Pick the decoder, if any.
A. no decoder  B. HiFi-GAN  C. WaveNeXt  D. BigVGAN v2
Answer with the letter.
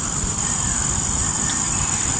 D